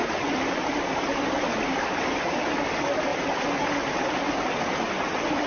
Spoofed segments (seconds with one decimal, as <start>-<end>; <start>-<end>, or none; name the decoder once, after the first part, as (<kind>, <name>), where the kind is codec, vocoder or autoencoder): none